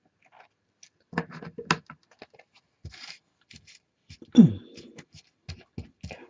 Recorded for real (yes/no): yes